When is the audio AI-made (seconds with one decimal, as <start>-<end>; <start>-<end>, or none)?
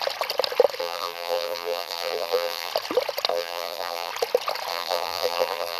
0.8-2.7; 3.3-4.1; 4.7-5.8